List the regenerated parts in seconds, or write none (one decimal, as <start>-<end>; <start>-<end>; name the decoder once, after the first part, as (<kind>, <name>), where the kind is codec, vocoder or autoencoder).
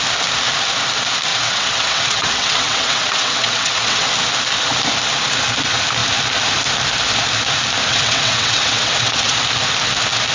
1.3-4.1 (vocoder, WaveNeXt); 7.9-9.3